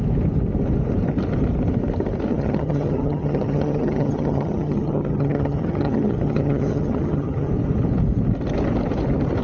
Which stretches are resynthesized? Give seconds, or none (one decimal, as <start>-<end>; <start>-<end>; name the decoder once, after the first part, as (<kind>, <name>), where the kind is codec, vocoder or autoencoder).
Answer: 2.3-7.5 (vocoder, HiFi-GAN)